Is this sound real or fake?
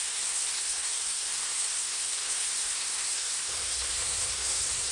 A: fake